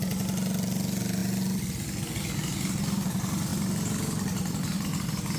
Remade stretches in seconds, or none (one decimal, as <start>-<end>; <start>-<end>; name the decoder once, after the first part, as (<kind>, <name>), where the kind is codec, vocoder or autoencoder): none